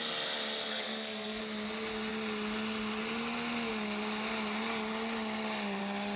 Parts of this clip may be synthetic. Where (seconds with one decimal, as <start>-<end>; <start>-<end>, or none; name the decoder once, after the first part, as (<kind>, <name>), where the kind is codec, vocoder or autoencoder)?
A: 0.7-1.4 (codec, SNAC)